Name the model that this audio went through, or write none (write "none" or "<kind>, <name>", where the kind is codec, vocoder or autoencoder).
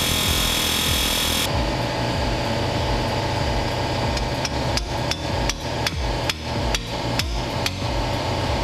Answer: vocoder, BigVGAN v2